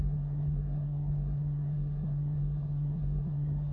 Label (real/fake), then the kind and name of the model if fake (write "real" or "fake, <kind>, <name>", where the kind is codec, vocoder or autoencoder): fake, codec, SNAC